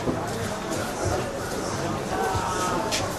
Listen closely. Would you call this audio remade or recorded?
remade